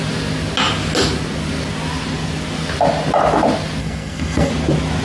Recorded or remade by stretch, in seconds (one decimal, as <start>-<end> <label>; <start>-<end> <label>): 0.0-3.8 recorded; 3.8-4.5 remade; 4.5-5.0 recorded